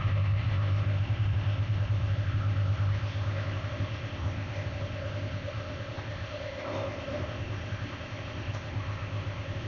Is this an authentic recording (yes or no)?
no